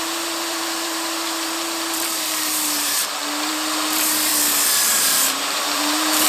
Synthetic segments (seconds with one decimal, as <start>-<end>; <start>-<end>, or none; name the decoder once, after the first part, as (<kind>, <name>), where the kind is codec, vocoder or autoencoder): 0.0-4.3 (vocoder, BigVGAN v2); 4.9-6.3